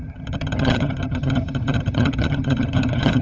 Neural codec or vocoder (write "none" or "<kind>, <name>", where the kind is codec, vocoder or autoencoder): vocoder, HiFi-GAN